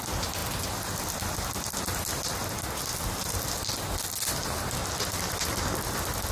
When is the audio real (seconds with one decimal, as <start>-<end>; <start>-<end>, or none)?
0.0-6.3